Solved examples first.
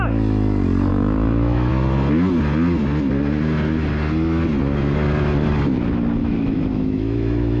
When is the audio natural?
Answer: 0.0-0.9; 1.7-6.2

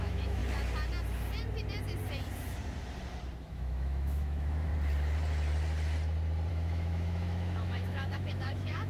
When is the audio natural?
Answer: 0.4-3.5; 4.7-6.5

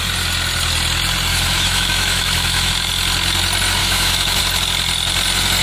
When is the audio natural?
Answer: 0.0-1.3; 2.7-3.8; 4.4-5.6